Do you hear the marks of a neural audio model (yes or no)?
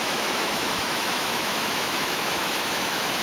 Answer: yes